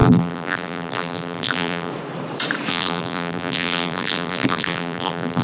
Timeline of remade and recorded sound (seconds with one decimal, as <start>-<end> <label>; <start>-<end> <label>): 0.0-1.9 remade; 1.9-2.7 recorded; 2.7-5.4 remade